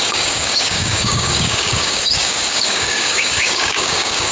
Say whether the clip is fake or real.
fake